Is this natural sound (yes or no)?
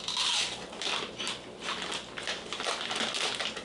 yes